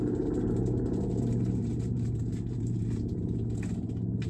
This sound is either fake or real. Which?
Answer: fake